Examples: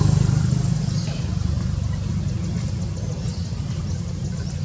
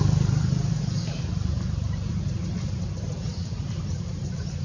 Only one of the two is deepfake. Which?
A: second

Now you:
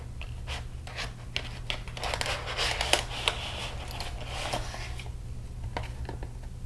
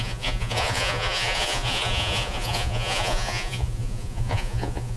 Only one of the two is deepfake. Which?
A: second